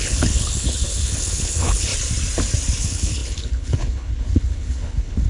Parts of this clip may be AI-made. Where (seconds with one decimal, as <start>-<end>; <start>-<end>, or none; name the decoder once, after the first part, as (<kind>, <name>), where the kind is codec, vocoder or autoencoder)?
0.0-1.9 (codec, HILCodec); 2.8-5.3